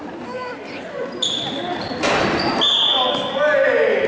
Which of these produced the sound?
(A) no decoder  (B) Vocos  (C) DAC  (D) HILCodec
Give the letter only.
A